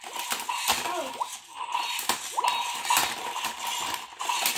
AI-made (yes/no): no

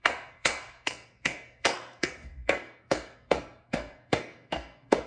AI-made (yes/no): yes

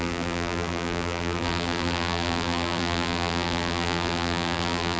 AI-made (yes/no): yes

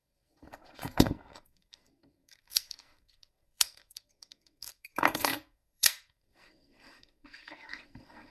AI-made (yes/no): yes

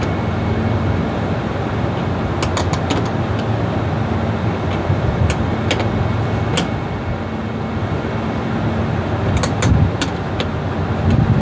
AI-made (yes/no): no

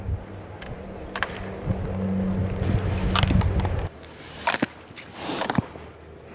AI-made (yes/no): no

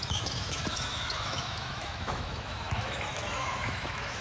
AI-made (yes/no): yes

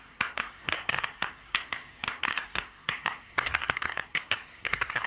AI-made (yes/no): yes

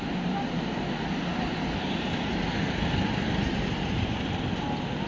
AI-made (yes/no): no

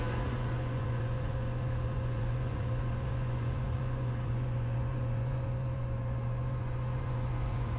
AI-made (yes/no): yes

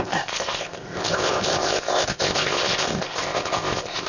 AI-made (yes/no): yes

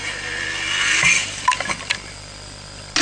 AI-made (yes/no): no